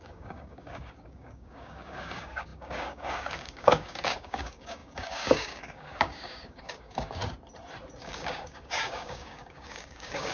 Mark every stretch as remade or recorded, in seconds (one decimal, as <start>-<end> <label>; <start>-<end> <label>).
0.0-7.2 remade; 7.2-8.0 recorded; 8.0-10.3 remade

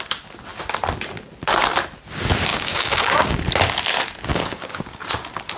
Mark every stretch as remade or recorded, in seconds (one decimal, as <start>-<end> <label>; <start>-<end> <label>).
0.0-2.5 recorded; 2.5-3.4 remade; 3.4-4.3 recorded; 4.3-5.0 remade; 5.0-5.6 recorded